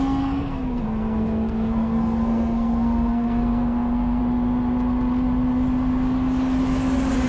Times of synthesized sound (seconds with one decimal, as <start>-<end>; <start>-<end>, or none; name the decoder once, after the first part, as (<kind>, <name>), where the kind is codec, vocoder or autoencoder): 0.0-4.2 (codec, SNAC)